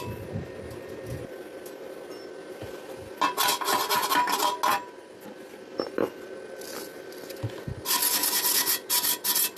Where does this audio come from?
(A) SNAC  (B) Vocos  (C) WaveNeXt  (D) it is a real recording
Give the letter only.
D